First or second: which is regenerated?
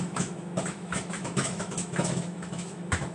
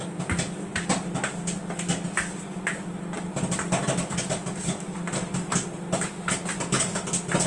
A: first